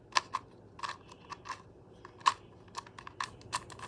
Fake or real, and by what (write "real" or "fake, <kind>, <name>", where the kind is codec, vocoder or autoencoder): real